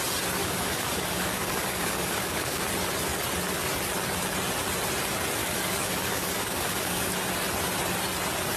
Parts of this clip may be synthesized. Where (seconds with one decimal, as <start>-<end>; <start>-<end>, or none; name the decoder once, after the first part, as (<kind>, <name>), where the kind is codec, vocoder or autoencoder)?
0.4-2.6 (codec, DAC); 5.4-7.1